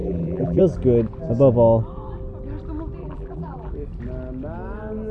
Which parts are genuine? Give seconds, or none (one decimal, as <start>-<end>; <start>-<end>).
0.6-3.0; 3.7-5.1